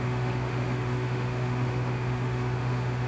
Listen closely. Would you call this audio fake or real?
fake